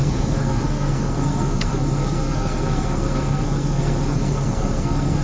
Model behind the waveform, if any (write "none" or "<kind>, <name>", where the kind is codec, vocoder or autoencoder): codec, SNAC